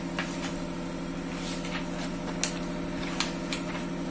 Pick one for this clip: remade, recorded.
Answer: recorded